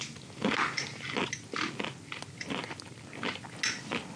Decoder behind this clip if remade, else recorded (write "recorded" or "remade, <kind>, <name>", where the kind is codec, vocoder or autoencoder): recorded